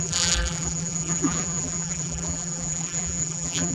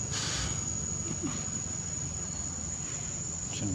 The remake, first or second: first